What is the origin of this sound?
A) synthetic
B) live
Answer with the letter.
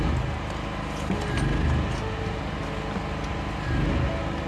B